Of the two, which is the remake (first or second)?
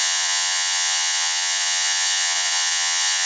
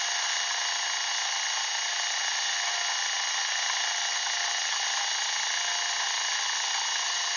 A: first